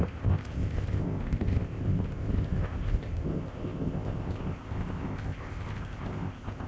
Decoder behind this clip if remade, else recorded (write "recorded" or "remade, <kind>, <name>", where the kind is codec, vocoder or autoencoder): remade, codec, ZipCodec